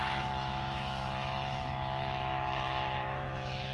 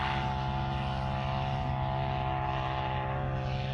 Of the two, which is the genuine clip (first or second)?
second